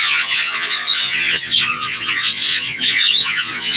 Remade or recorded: remade